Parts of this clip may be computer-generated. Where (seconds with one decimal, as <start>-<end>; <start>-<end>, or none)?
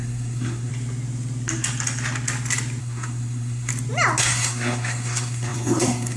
0.0-0.7; 2.8-3.7; 4.2-6.2